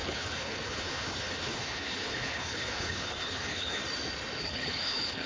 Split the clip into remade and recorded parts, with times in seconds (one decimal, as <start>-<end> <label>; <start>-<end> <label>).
0.0-3.8 remade; 3.8-4.4 recorded; 4.4-5.3 remade